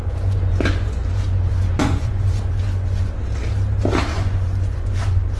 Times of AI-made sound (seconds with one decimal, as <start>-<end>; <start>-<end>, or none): 0.0-3.2; 4.1-5.4

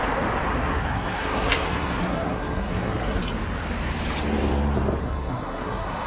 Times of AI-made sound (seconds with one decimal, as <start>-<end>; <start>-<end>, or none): 0.5-3.2; 5.0-6.1

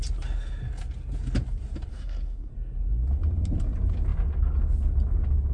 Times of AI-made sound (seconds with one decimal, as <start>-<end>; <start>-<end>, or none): 1.9-2.5

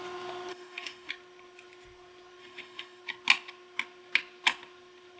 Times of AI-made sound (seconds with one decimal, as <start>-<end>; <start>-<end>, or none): 0.5-1.1; 2.4-3.0

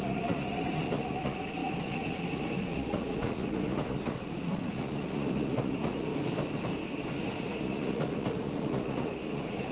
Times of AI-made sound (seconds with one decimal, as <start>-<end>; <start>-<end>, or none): 0.0-6.1; 7.1-9.7

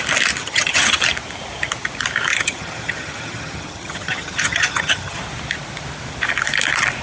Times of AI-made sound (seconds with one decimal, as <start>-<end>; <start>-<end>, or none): 0.4-1.0; 2.3-5.2